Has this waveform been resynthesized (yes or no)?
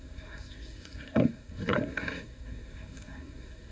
yes